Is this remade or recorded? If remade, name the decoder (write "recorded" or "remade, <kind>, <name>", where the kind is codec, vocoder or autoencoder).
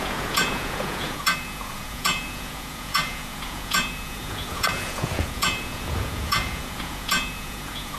remade, vocoder, Vocos